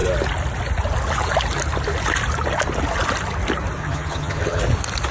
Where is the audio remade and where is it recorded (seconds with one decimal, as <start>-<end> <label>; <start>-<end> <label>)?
0.0-3.8 recorded; 3.8-4.6 remade; 4.6-5.1 recorded